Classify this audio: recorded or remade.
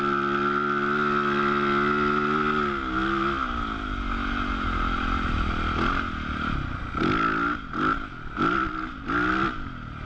recorded